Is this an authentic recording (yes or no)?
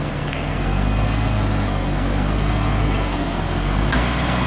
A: no